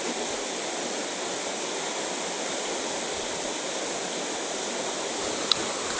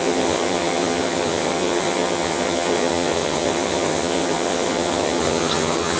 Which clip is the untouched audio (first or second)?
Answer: first